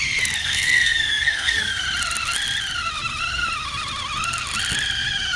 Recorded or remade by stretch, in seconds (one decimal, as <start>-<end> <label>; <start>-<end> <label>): 0.0-0.4 recorded; 0.4-1.8 remade; 1.8-5.4 recorded